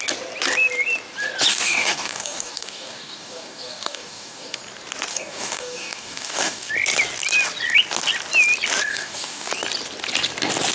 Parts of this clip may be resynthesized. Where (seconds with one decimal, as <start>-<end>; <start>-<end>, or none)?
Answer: 1.5-4.6; 5.1-6.7; 8.9-9.5